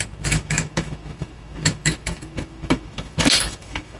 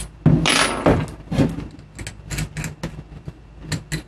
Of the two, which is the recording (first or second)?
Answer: second